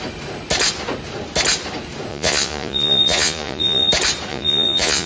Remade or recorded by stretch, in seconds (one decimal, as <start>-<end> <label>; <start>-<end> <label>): 0.0-2.1 recorded; 2.1-3.9 remade; 3.9-4.3 recorded; 4.3-5.1 remade